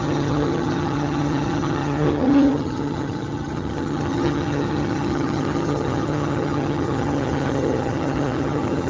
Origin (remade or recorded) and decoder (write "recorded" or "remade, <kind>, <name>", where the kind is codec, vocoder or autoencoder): remade, vocoder, HiFi-GAN